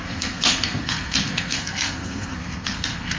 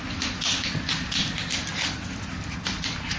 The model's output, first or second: first